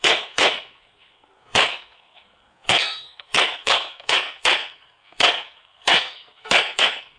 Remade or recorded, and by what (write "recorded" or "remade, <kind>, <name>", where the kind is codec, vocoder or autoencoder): remade, codec, SNAC